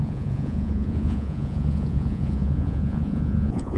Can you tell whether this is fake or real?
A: fake